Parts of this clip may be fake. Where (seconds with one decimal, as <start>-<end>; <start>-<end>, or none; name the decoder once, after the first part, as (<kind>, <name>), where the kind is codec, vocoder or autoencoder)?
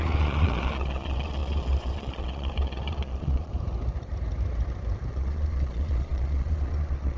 0.0-3.5 (vocoder, Vocos); 5.1-7.2